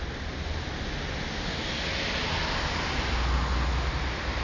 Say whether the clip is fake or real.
real